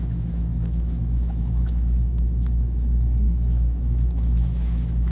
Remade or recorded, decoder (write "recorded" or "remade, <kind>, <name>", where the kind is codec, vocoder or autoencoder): remade, autoencoder, DAC-VAE